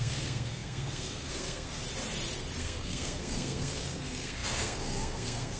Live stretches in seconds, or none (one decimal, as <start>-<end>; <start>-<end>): 1.8-2.6